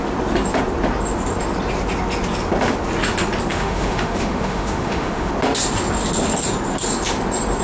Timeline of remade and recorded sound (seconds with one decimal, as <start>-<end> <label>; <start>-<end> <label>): 0.0-3.5 recorded; 3.5-5.3 remade; 5.3-7.6 recorded